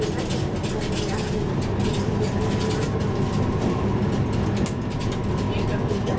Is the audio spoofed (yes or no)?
no